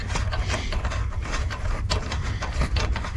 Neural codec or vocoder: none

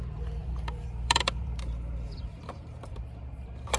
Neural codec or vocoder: vocoder, BigVGAN v2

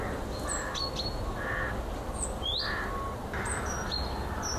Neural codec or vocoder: none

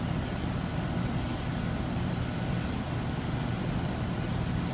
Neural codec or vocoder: none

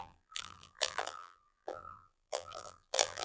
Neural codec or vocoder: vocoder, BigVGAN v2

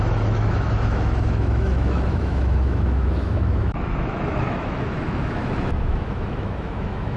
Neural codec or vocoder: autoencoder, DAC-VAE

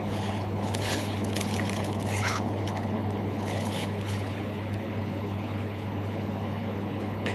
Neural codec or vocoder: codec, HILCodec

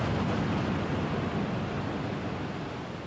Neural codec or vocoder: none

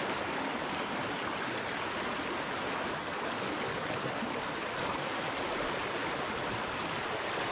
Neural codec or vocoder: none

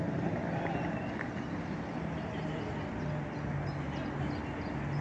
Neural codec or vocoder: none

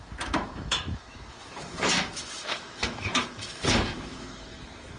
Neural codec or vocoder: autoencoder, DAC-VAE